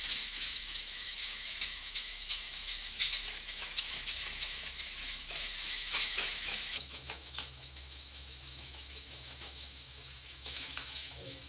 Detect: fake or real fake